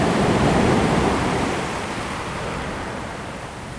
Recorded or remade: remade